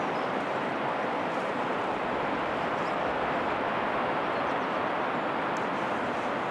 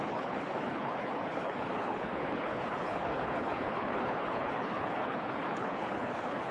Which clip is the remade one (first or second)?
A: second